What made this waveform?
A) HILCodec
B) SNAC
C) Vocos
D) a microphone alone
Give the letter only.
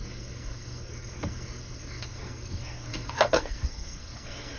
B